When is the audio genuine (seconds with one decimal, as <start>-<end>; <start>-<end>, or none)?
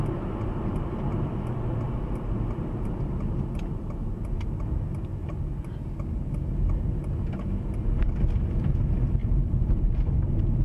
0.0-1.1; 1.8-9.2; 9.9-10.6